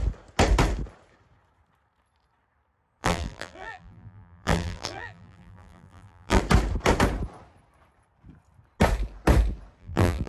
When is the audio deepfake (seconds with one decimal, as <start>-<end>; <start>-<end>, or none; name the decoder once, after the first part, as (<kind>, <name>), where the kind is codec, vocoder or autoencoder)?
3.0-6.4 (vocoder, BigVGAN v2); 9.8-10.3

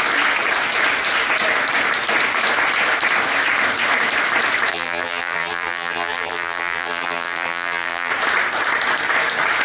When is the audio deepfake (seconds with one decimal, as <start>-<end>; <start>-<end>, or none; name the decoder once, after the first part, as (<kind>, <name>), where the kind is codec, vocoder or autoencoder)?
4.7-8.1 (vocoder, BigVGAN v2)

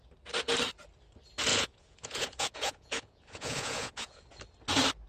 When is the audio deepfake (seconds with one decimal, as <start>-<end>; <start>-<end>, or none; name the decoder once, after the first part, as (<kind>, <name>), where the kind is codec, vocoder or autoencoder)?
1.5-4.2 (vocoder, Vocos)

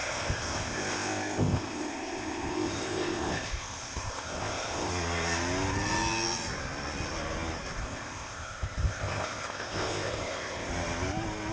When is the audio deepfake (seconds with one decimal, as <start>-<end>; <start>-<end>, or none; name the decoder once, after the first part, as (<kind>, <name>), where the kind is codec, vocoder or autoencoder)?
0.0-4.9 (codec, ZipCodec); 7.8-10.7

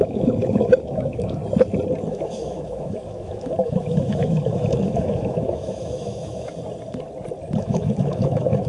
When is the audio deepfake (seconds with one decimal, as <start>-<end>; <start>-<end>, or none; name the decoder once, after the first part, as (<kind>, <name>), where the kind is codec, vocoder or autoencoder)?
0.0-1.4 (autoencoder, DAC-VAE); 2.1-6.5; 7.6-8.7